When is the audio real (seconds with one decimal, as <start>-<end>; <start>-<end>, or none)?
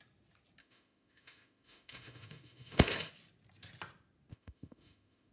0.0-0.6; 3.1-4.3